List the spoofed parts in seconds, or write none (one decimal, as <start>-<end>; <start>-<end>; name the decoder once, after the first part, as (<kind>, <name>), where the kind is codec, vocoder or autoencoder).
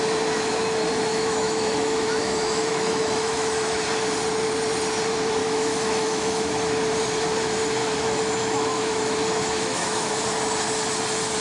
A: 1.1-3.8 (autoencoder, DAC-VAE); 5.4-6.5; 7.8-10.1